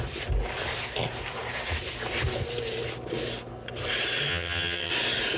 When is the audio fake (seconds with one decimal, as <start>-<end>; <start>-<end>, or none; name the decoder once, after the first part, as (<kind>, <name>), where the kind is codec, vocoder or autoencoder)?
4.3-4.9 (vocoder, HiFi-GAN)